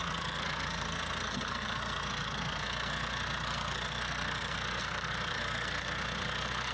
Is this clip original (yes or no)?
no